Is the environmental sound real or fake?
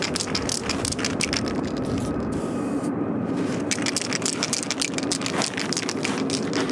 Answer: real